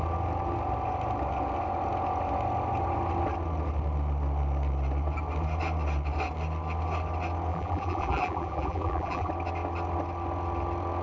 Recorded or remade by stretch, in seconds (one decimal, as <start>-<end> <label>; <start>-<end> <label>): 0.0-7.5 recorded; 7.5-9.3 remade; 9.3-11.0 recorded